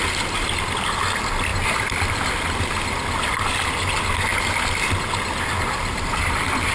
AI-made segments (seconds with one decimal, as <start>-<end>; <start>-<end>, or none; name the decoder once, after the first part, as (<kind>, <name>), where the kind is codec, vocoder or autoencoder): none